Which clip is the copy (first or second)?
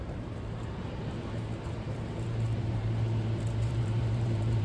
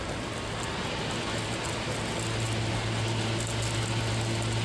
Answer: first